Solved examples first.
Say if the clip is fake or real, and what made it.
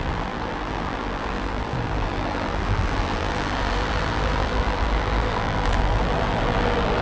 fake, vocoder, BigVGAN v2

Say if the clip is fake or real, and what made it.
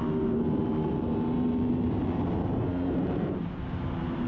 fake, vocoder, BigVGAN v2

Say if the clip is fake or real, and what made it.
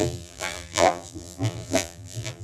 fake, vocoder, BigVGAN v2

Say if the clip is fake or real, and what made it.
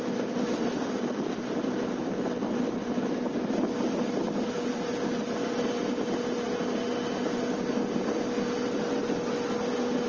real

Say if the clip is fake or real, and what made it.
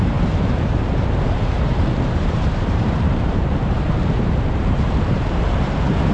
fake, vocoder, BigVGAN v2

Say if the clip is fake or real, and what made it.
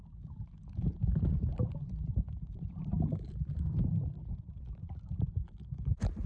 fake, vocoder, BigVGAN v2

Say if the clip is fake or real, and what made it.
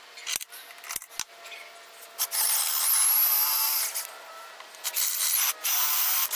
real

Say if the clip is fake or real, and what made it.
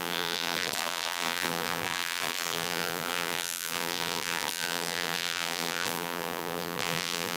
fake, vocoder, BigVGAN v2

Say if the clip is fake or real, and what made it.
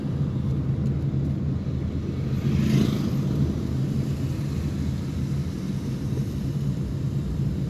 real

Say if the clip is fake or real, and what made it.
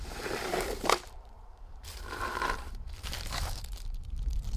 fake, vocoder, BigVGAN v2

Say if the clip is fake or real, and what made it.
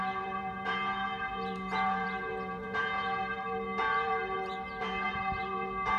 fake, vocoder, BigVGAN v2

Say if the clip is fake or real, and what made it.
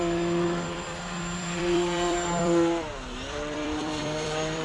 fake, vocoder, BigVGAN v2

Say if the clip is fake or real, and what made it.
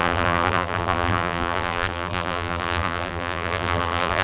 fake, vocoder, BigVGAN v2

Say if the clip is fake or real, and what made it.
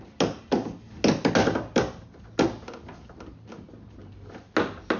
real